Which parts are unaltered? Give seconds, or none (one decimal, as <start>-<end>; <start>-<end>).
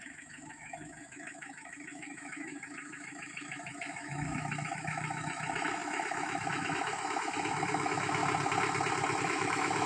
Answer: 8.2-9.2